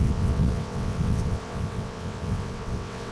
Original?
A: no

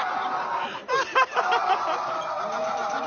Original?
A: yes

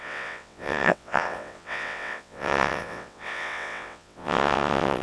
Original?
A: no